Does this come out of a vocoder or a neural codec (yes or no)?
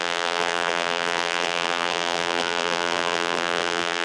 yes